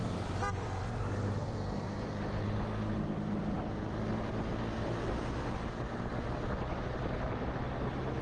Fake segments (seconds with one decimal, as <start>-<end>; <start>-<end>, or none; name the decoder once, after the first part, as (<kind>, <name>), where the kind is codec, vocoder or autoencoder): none